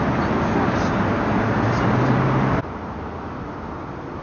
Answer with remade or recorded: recorded